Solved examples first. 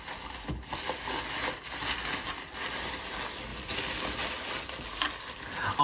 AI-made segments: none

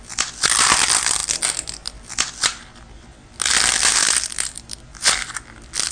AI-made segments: none